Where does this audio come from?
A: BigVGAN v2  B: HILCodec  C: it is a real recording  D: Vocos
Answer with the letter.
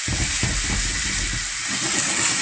C